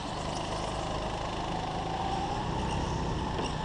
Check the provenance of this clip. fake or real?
real